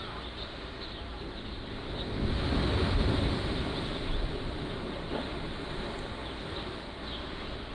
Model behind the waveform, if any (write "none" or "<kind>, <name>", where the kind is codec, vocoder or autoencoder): none